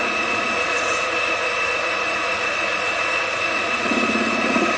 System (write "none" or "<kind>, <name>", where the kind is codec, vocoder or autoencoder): vocoder, Vocos